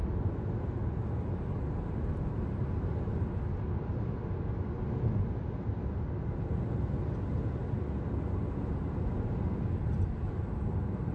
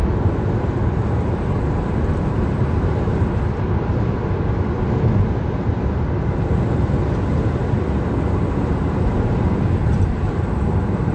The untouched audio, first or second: first